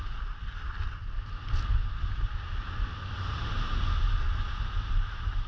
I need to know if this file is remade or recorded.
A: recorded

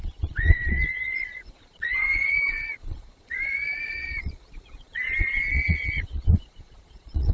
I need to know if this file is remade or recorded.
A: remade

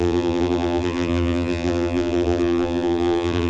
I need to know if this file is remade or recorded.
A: remade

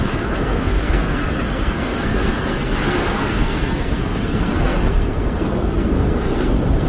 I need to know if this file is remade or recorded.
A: remade